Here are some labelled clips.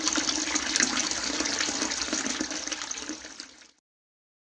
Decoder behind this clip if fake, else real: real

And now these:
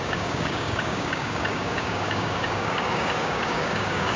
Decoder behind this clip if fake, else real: fake, codec, DAC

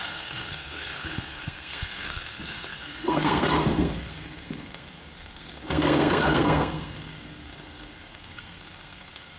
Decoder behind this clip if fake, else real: fake, codec, SNAC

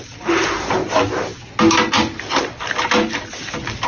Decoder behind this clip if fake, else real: real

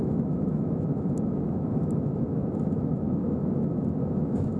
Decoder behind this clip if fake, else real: fake, autoencoder, DAC-VAE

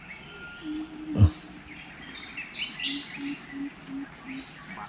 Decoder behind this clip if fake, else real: real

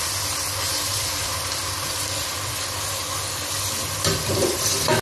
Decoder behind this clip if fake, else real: real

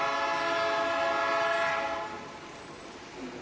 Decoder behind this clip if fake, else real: real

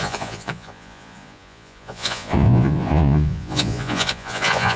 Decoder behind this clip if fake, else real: fake, vocoder, Vocos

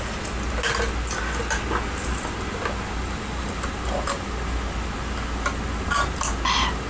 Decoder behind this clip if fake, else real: real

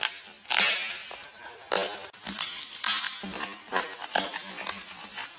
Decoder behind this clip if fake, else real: real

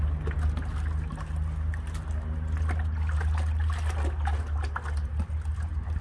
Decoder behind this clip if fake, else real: real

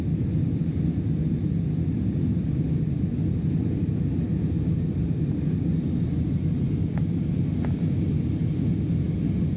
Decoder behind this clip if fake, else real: real